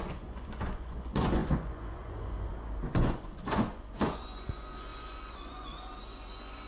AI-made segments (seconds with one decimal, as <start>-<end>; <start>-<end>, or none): 0.0-6.7